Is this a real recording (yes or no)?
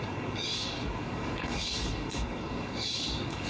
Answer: no